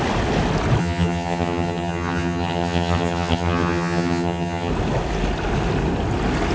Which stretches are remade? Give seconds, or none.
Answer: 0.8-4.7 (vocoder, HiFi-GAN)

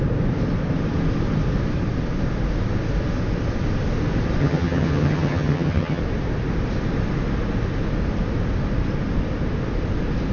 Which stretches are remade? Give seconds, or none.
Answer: 4.4-6.0 (vocoder, HiFi-GAN)

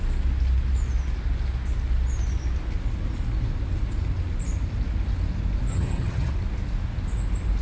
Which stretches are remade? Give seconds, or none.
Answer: 5.7-6.3 (vocoder, HiFi-GAN)

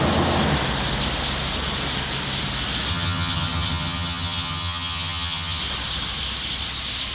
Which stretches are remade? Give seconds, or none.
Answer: 2.9-5.6 (vocoder, HiFi-GAN)